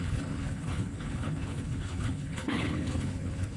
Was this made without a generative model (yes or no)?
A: no